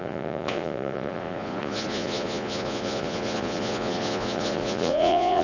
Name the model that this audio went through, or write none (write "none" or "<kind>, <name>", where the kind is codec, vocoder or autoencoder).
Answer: vocoder, Vocos